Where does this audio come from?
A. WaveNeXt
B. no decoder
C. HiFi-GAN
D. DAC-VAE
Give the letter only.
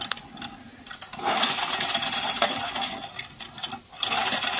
B